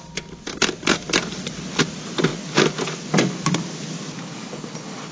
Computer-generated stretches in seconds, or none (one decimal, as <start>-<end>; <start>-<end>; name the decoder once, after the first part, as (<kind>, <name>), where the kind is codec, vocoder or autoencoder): none